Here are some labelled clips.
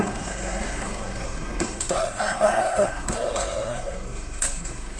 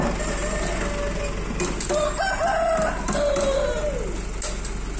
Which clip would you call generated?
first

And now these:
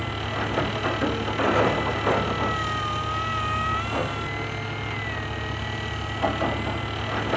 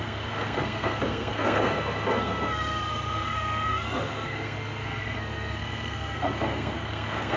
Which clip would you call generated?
second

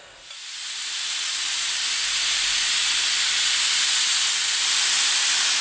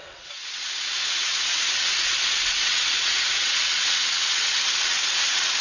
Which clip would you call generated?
second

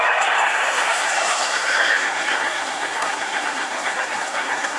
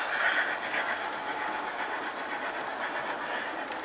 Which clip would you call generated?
first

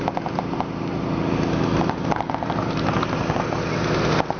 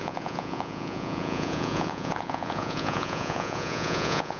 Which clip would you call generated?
second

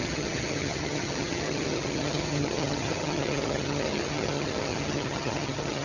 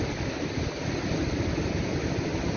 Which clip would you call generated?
first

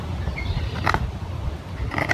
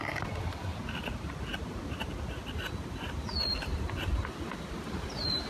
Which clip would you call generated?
first